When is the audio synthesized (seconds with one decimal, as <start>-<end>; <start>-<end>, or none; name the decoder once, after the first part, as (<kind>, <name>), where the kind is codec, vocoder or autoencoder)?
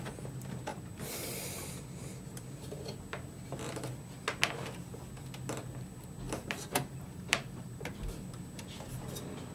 0.7-1.6 (vocoder, BigVGAN v2); 6.4-8.2